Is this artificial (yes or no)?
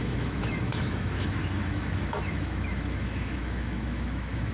yes